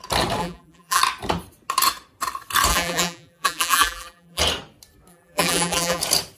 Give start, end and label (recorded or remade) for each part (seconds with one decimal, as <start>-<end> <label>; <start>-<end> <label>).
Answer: 0.0-0.4 recorded; 0.4-1.0 remade; 1.0-2.7 recorded; 2.7-4.4 remade; 4.4-5.1 recorded; 5.1-6.0 remade; 6.0-6.4 recorded